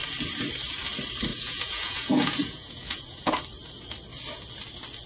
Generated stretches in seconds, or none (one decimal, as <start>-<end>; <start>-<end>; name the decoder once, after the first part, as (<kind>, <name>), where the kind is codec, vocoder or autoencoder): 1.3-3.3 (vocoder, Vocos)